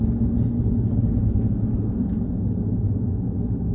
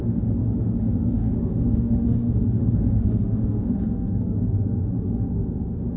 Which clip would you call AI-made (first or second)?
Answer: second